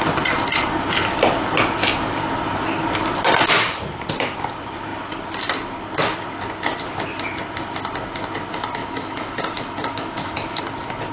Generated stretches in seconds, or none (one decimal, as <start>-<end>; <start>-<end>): 8.8-10.6